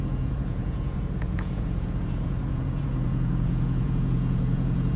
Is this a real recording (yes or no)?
no